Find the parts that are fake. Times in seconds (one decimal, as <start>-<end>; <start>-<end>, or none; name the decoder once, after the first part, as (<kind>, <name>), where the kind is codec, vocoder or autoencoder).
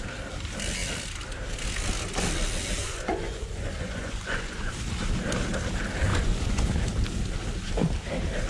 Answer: 2.8-4.7 (vocoder, Vocos); 6.1-6.7